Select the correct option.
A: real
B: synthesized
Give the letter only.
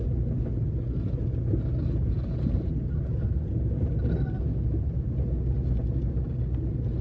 A